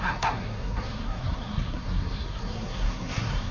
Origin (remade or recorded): remade